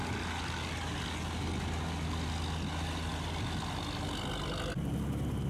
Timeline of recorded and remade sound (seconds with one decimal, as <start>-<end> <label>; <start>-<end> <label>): 0.0-5.5 recorded